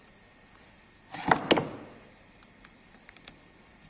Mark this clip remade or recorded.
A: remade